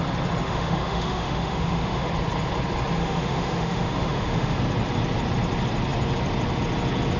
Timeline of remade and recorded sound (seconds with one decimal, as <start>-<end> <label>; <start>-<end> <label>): 0.0-0.4 recorded; 0.4-2.1 remade; 2.1-3.0 recorded; 3.0-4.6 remade; 4.6-7.2 recorded